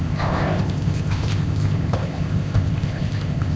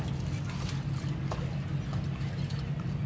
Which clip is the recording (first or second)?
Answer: second